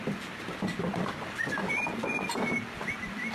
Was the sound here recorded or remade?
recorded